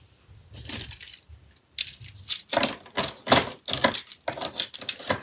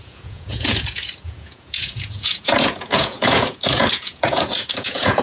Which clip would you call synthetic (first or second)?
second